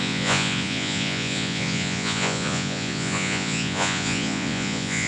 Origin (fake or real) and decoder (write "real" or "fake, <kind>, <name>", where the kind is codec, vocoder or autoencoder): fake, vocoder, Vocos